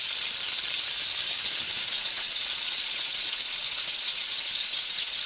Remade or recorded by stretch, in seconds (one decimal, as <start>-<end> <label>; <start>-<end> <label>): 0.0-1.7 recorded; 1.7-5.3 remade